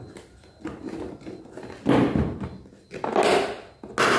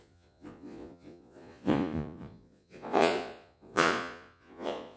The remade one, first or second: second